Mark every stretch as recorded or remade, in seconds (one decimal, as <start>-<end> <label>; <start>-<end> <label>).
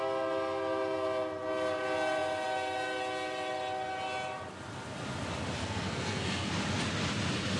0.0-5.6 recorded; 5.6-6.5 remade; 6.5-7.6 recorded